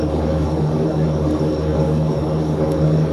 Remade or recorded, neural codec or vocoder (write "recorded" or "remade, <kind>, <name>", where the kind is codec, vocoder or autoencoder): remade, codec, DAC